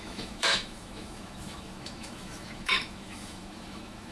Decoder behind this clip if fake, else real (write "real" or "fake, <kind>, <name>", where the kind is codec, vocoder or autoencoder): fake, autoencoder, DAC-VAE